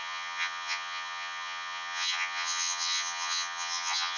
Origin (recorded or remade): remade